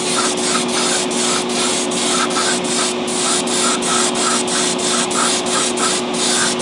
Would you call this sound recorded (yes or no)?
yes